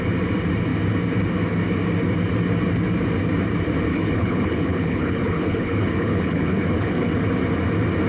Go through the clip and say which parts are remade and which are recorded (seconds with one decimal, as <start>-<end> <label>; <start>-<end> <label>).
0.0-3.9 recorded; 3.9-7.1 remade; 7.1-8.1 recorded